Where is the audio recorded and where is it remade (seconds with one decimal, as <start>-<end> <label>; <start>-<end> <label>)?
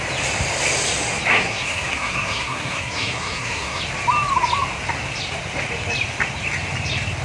0.0-1.3 recorded; 1.3-3.8 remade; 3.8-7.2 recorded